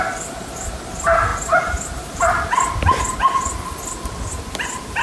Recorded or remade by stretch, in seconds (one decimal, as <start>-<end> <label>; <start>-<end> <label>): 0.0-5.0 recorded